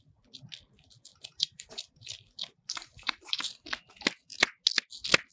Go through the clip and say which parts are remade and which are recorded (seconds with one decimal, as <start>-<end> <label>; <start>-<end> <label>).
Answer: 0.0-1.1 recorded; 1.1-2.1 remade; 2.1-2.5 recorded; 2.5-3.4 remade; 3.4-5.3 recorded